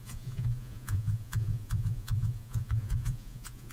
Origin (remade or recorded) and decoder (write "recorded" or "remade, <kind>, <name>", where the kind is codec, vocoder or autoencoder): remade, vocoder, Vocos